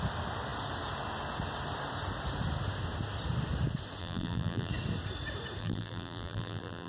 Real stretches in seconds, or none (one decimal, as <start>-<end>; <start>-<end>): 0.0-4.0; 4.7-5.6